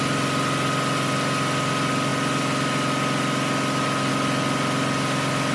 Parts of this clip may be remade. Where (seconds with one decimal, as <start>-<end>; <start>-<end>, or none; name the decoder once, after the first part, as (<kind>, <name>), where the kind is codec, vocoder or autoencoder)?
none